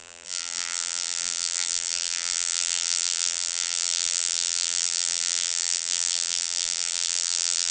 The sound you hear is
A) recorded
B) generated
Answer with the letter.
B